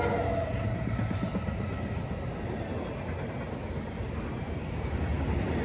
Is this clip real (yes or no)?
yes